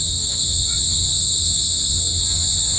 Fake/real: fake